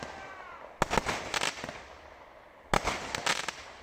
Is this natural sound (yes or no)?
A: yes